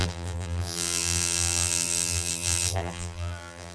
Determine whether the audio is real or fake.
fake